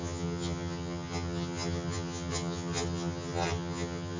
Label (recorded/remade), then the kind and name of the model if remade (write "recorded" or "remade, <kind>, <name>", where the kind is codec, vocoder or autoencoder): remade, vocoder, HiFi-GAN